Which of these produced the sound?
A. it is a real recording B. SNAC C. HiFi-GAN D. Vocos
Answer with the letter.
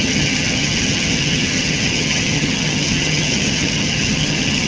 C